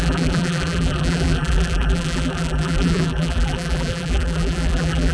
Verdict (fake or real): fake